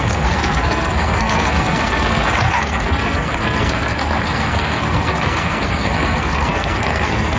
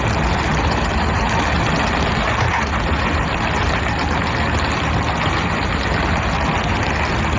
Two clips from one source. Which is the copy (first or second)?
first